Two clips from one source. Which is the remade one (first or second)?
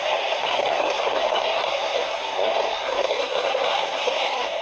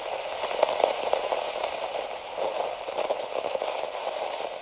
first